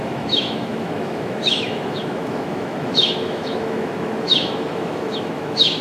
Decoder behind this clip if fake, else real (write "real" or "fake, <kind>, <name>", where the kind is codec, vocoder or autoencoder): fake, autoencoder, DAC-VAE